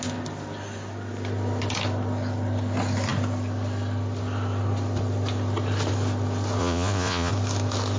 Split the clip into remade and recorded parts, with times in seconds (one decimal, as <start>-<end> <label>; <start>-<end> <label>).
0.0-6.6 recorded; 6.6-7.3 remade; 7.3-8.0 recorded